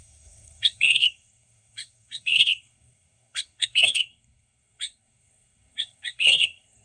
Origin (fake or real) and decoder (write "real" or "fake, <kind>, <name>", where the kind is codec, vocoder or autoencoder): fake, codec, SNAC